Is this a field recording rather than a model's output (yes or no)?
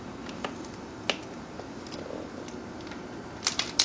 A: yes